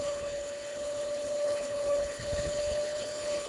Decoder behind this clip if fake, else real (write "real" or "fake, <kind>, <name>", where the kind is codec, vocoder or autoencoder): fake, codec, HILCodec